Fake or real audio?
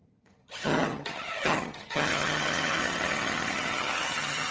fake